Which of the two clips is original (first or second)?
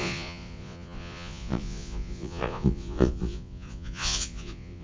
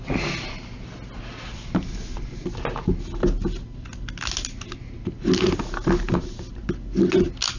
second